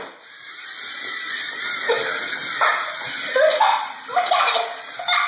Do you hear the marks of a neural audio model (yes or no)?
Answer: no